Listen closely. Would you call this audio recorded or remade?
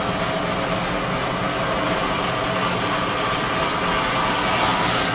recorded